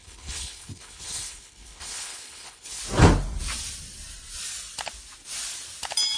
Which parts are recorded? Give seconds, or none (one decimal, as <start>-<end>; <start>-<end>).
2.8-6.2